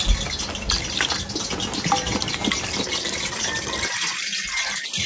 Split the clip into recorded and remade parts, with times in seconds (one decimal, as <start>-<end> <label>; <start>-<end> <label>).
0.0-5.1 recorded